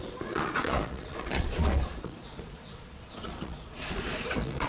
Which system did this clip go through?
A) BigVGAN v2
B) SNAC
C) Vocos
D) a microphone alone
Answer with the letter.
C